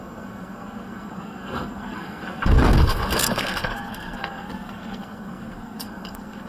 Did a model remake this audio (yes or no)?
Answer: yes